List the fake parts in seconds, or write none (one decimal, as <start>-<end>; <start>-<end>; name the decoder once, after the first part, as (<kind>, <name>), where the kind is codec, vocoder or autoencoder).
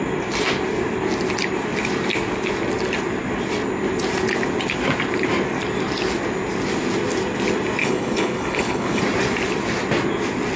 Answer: 7.8-9.0 (codec, HILCodec)